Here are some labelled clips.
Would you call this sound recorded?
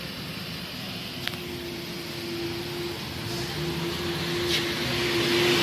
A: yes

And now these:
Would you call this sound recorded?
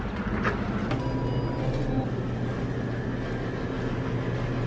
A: yes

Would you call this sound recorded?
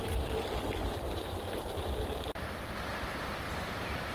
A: yes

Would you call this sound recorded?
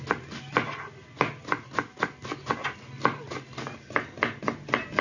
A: yes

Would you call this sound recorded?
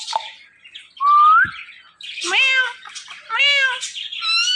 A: yes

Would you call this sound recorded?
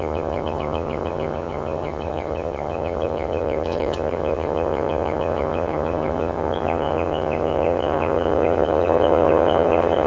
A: no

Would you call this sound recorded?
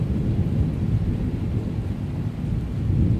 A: yes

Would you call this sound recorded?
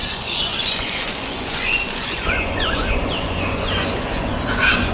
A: no